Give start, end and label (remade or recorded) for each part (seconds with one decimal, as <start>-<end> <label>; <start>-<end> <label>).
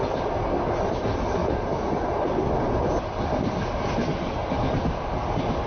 0.0-5.7 recorded